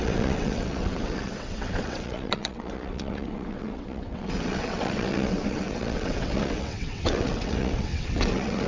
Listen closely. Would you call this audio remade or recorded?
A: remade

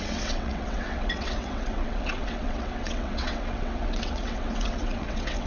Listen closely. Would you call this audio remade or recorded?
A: remade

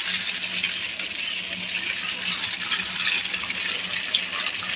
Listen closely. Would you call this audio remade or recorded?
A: recorded